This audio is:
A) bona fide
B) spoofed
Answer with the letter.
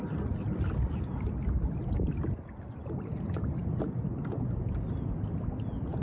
A